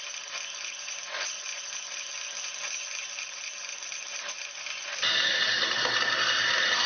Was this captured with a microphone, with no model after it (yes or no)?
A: yes